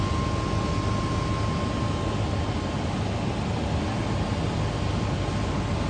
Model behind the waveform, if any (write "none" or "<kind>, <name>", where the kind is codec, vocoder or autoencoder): none